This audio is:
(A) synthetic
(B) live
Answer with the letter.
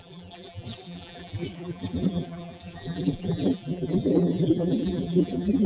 A